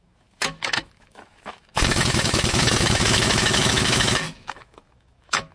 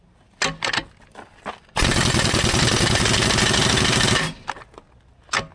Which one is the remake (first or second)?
first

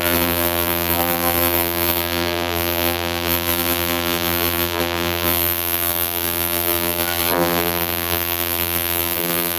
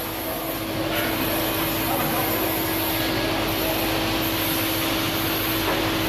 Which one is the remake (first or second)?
first